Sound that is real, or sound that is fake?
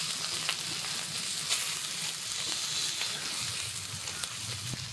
real